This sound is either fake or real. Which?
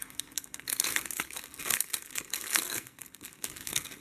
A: fake